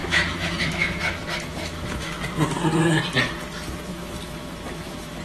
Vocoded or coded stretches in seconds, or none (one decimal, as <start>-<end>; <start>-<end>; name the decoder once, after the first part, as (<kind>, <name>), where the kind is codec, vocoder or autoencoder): 0.0-2.2 (autoencoder, DAC-VAE); 3.9-5.2